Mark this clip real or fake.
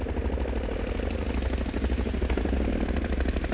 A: real